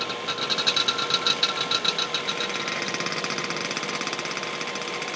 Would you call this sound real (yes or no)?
yes